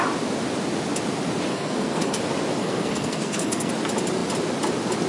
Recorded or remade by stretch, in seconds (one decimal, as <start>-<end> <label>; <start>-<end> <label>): 0.0-1.5 recorded; 1.5-2.2 remade; 2.2-2.6 recorded; 2.6-3.7 remade; 3.7-5.1 recorded